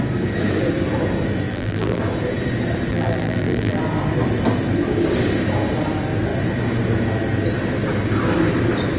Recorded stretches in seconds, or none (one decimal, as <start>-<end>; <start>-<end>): 0.0-1.5; 2.0-2.9; 3.8-9.0